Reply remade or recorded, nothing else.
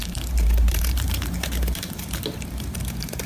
remade